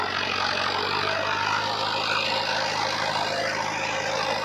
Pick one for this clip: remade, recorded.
recorded